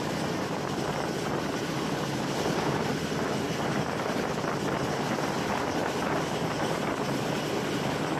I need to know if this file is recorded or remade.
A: recorded